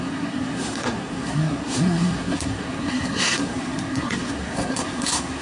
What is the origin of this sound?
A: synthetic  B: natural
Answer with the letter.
A